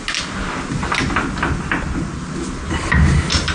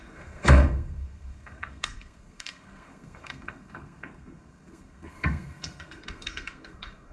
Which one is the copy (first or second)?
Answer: second